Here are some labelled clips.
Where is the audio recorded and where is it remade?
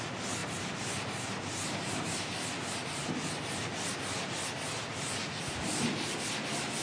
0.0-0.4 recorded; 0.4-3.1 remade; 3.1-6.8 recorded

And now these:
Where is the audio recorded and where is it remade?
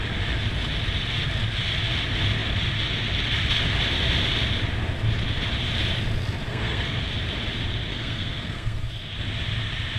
0.0-6.5 recorded; 6.5-7.0 remade; 7.0-7.9 recorded; 7.9-8.9 remade; 8.9-10.0 recorded